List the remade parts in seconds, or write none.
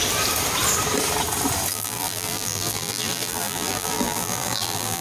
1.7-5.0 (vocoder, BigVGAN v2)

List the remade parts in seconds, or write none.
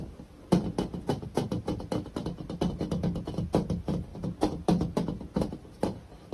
4.1-6.3 (vocoder, BigVGAN v2)